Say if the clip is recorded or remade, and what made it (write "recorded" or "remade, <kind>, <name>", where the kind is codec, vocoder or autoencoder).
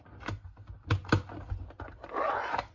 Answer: recorded